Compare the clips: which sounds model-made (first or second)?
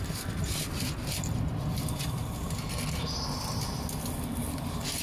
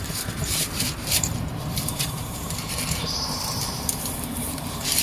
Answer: second